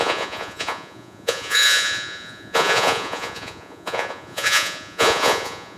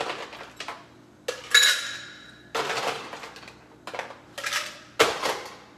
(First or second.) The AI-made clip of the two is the first